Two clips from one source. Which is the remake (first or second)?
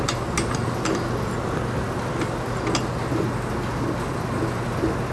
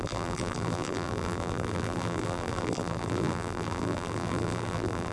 second